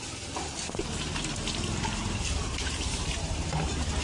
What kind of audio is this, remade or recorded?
recorded